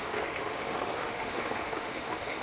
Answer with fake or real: fake